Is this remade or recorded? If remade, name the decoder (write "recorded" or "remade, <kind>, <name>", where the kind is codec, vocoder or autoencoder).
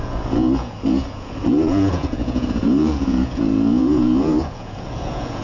remade, vocoder, Vocos